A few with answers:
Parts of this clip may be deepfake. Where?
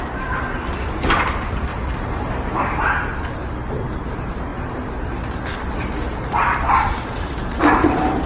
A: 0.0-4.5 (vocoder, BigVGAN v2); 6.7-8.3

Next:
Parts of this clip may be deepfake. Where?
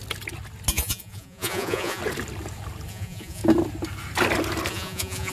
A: 0.7-2.0 (vocoder, Vocos); 2.9-3.4; 4.7-5.3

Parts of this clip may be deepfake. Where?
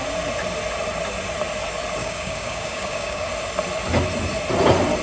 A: 2.0-3.3 (codec, DAC)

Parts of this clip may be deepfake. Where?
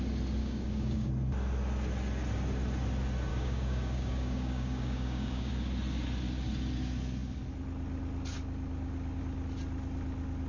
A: 0.4-1.1 (codec, DAC); 3.3-5.5